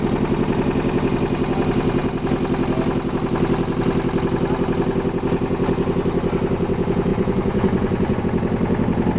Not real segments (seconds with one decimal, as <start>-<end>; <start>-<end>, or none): 7.1-8.2